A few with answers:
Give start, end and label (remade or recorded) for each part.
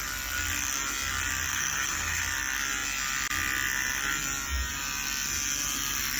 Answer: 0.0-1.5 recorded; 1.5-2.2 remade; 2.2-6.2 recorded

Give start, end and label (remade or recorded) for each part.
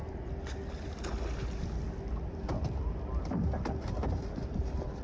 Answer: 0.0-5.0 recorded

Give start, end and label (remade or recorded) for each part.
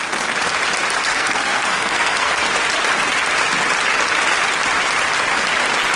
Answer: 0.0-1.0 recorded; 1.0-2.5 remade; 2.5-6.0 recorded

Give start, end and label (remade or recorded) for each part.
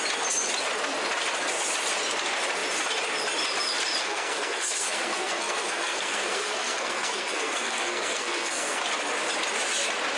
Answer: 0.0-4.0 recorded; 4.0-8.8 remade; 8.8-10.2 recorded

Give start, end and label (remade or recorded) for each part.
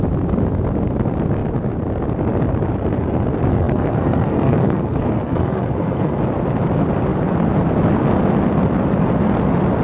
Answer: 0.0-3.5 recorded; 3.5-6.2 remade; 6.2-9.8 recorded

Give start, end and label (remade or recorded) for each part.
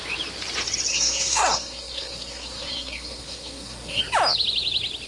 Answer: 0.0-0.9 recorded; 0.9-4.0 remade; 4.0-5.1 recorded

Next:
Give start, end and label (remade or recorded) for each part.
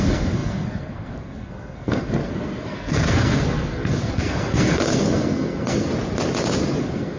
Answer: 0.0-5.9 remade; 5.9-6.8 recorded; 6.8-7.2 remade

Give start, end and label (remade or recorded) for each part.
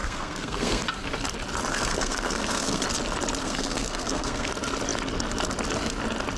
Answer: 0.0-0.8 remade; 0.8-1.7 recorded; 1.7-2.8 remade; 2.8-3.4 recorded; 3.4-4.5 remade; 4.5-6.4 recorded